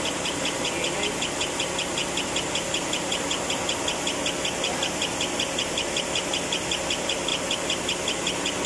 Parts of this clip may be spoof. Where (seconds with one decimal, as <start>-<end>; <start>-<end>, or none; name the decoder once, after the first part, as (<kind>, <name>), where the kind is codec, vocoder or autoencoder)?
none